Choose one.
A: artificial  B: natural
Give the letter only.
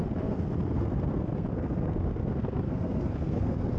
A